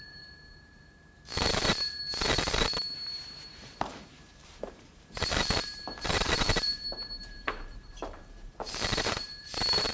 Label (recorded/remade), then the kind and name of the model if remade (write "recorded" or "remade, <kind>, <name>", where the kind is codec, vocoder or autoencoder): remade, vocoder, BigVGAN v2